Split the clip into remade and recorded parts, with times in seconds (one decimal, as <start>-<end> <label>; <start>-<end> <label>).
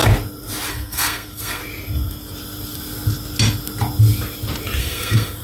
0.0-0.7 recorded; 0.7-1.6 remade; 1.6-4.8 recorded; 4.8-5.4 remade